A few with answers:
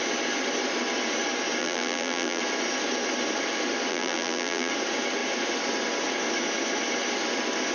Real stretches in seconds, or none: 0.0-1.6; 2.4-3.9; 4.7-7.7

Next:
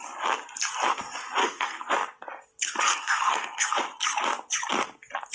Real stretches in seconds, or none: 0.0-1.4; 1.9-2.9; 3.7-5.3

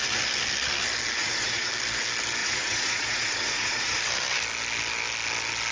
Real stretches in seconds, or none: 0.0-1.2; 1.7-2.4; 4.0-5.7

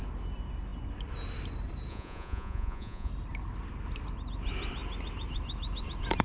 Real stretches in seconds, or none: 0.0-1.9; 3.1-6.2

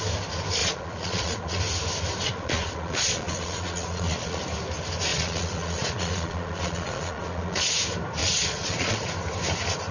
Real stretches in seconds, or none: 0.0-0.6; 1.6-2.2; 4.4-5.1; 7.7-8.2; 9.1-9.9